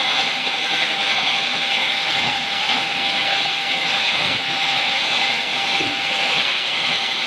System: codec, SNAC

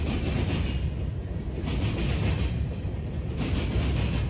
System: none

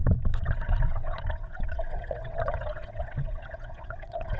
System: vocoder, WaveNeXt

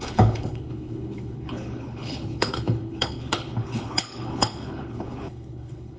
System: codec, HILCodec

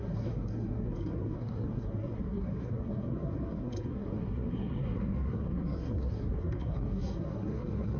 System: codec, SNAC